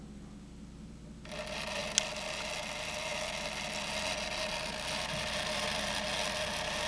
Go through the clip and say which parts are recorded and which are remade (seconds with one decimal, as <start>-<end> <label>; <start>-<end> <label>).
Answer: 0.0-6.9 recorded